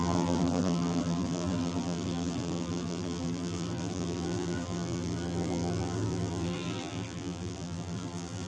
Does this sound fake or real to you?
fake